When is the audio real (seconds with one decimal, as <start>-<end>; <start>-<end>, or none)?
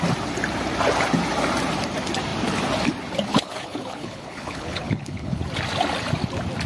0.0-3.3; 5.4-6.7